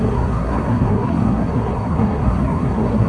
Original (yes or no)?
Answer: no